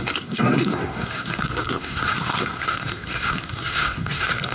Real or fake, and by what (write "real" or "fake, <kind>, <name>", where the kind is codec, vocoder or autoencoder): fake, codec, SNAC